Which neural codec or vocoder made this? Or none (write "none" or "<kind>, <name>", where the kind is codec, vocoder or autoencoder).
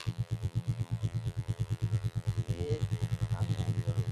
vocoder, BigVGAN v2